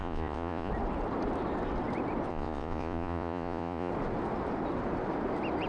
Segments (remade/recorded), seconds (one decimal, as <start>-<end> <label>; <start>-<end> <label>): 0.0-0.7 remade; 0.7-2.3 recorded; 2.3-3.9 remade; 3.9-5.7 recorded